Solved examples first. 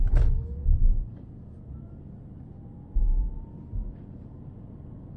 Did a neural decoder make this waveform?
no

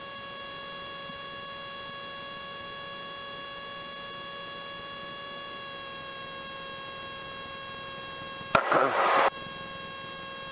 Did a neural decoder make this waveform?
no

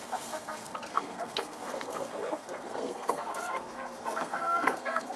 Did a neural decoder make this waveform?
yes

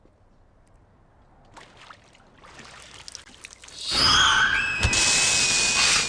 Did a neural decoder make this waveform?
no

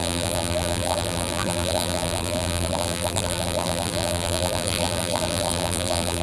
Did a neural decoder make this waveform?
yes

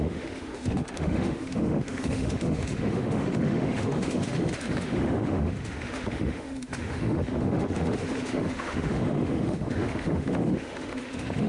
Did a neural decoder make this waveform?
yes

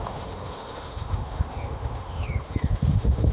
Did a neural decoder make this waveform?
yes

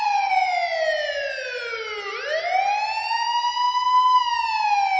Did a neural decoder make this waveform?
no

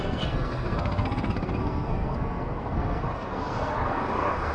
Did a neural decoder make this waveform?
yes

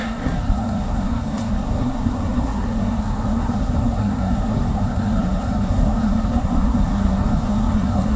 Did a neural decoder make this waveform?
yes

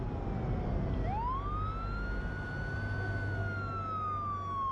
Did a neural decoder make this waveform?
no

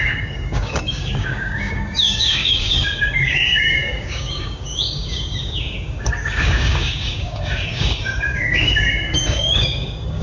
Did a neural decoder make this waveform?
yes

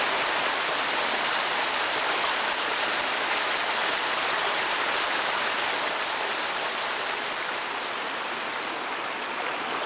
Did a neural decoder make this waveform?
no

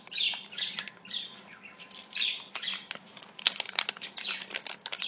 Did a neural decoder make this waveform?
no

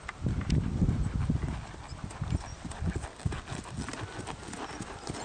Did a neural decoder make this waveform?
yes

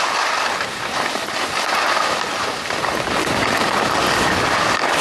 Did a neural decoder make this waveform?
no